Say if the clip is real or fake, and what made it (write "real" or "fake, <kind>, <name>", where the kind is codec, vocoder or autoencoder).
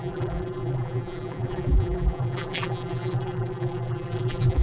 fake, vocoder, BigVGAN v2